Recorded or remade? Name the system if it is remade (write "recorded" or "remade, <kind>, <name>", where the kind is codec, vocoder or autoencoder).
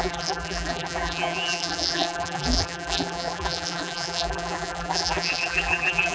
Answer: remade, vocoder, BigVGAN v2